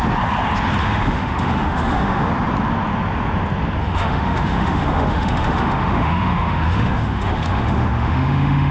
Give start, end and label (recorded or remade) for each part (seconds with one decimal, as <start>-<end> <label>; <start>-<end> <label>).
0.0-0.8 recorded; 0.8-2.3 remade; 2.3-3.8 recorded; 3.8-8.7 remade